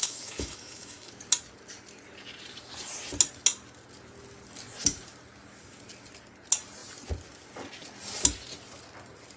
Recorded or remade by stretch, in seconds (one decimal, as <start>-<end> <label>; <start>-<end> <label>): 0.0-1.1 remade; 1.1-9.4 recorded